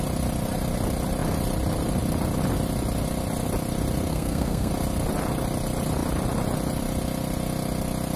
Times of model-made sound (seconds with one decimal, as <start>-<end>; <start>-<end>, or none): 4.1-4.7